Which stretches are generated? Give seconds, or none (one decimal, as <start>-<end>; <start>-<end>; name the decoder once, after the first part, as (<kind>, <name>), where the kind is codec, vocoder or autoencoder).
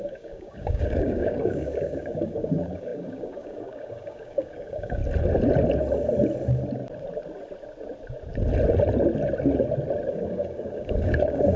0.0-5.0 (codec, DAC); 10.1-11.6